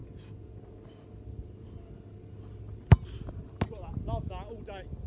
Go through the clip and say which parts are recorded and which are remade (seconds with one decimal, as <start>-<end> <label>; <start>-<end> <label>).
0.0-0.6 remade; 0.6-5.1 recorded